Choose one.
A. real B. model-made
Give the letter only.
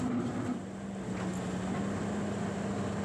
A